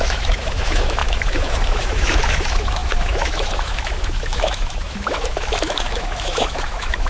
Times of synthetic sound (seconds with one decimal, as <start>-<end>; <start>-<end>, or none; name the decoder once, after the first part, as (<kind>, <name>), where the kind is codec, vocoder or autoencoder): 0.0-7.1 (autoencoder, DAC-VAE)